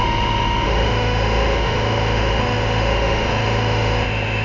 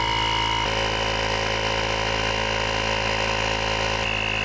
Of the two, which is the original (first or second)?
second